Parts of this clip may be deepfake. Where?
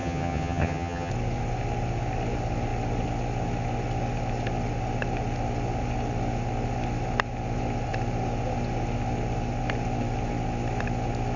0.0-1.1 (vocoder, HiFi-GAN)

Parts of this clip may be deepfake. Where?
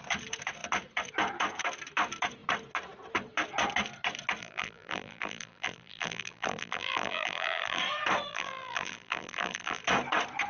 4.4-7.8 (vocoder, BigVGAN v2); 8.3-9.8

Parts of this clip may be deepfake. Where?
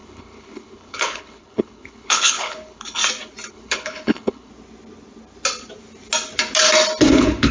0.0-3.0 (codec, HILCodec); 3.5-4.5; 7.1-7.5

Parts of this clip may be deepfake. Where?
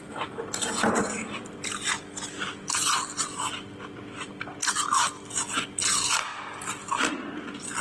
none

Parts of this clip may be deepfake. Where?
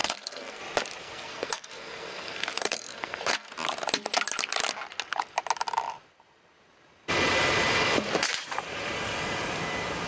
0.0-0.6 (codec, SNAC); 1.0-3.5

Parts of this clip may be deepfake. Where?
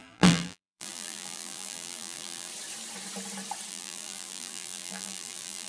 0.0-2.5 (vocoder, BigVGAN v2); 3.7-5.7